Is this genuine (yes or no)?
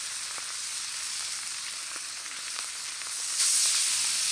yes